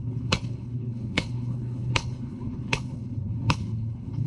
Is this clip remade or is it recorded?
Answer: remade